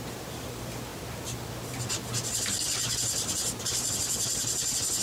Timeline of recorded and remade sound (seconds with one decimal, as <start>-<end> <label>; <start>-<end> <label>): 0.0-5.0 recorded